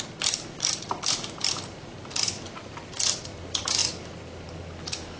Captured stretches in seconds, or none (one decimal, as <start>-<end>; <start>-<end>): 3.8-5.2